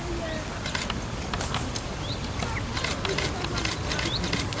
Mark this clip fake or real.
real